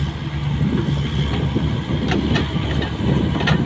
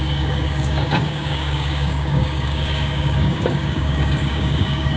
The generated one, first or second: second